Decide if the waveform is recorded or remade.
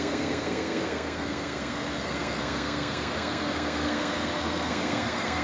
remade